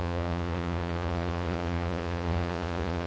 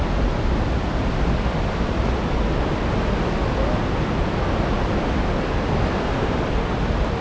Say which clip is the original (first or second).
second